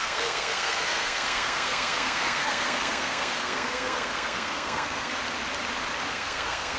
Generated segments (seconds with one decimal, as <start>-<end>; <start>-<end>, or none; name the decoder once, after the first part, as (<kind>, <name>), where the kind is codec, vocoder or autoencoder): 0.0-5.1 (codec, SNAC); 6.1-6.8